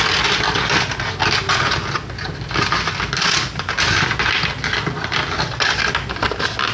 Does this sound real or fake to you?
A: real